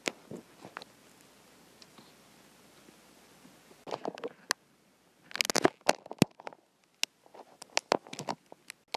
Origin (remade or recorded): recorded